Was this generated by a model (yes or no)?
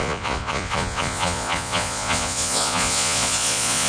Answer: yes